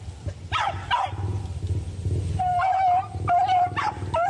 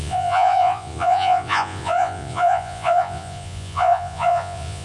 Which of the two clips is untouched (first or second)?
first